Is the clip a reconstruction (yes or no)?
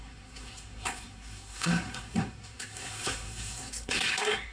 yes